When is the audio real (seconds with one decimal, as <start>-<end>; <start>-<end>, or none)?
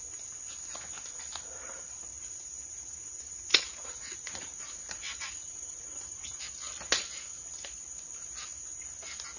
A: 0.0-2.1; 6.4-9.4